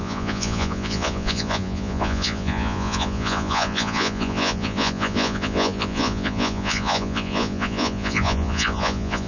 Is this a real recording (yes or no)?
no